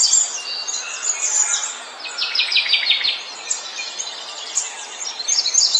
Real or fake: real